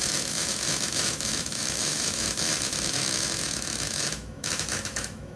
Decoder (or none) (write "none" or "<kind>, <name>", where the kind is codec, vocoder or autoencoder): autoencoder, DAC-VAE